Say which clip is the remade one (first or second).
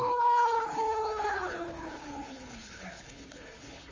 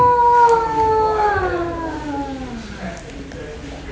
first